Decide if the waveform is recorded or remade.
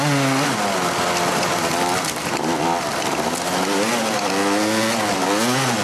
recorded